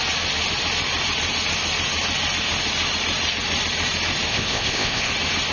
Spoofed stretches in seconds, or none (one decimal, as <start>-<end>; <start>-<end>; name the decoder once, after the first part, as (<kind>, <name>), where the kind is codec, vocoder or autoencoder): 4.3-5.1 (codec, ZipCodec)